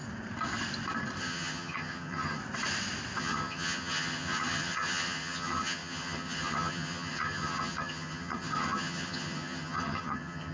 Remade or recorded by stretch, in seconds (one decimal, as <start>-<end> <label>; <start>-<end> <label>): 0.0-1.2 recorded; 1.2-2.4 remade; 2.4-3.2 recorded; 3.2-10.5 remade